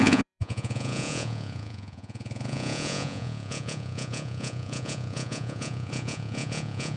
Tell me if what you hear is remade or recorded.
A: remade